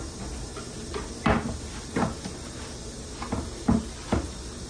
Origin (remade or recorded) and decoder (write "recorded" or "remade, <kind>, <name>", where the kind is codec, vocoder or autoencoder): recorded